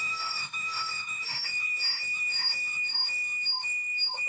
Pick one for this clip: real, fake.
fake